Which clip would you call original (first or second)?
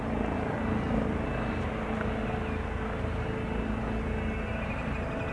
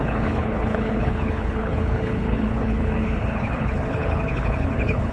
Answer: first